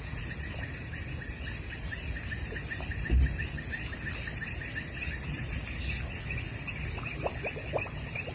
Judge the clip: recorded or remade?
recorded